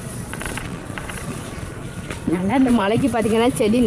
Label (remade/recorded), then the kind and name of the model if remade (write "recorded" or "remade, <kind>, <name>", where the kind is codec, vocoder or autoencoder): remade, vocoder, Vocos